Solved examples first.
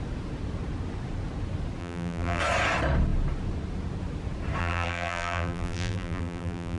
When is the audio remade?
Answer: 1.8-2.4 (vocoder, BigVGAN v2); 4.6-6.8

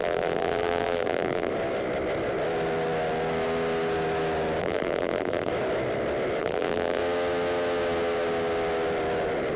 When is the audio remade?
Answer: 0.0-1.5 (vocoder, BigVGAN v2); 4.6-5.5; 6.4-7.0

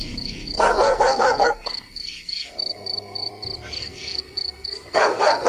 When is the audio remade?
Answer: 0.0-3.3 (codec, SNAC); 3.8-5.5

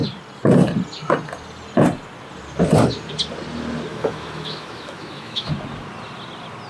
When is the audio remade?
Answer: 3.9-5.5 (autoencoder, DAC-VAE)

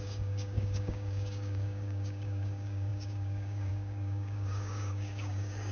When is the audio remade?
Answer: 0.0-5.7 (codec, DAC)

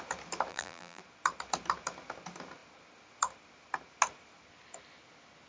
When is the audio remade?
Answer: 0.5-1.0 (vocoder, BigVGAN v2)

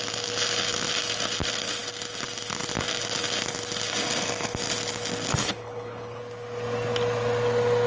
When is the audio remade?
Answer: 5.3-6.2 (codec, HILCodec)

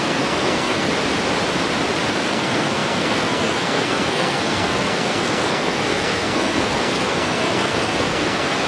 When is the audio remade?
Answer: 0.0-0.9 (codec, SNAC); 2.1-8.7